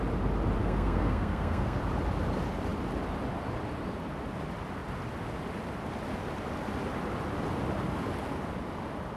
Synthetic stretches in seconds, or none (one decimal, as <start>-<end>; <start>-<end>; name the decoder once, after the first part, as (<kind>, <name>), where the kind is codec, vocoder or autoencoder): 0.6-1.8 (codec, SNAC)